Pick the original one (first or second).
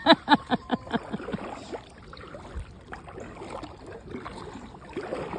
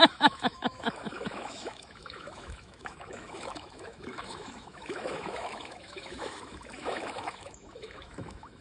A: first